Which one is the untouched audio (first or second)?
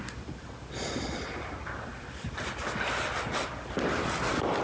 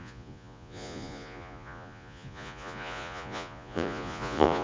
first